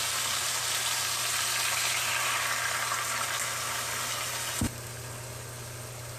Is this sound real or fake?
real